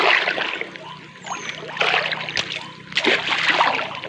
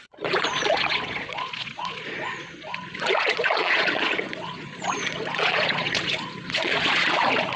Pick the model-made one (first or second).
second